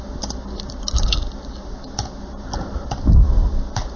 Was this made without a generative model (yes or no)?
yes